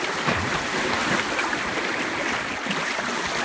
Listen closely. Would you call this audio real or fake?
real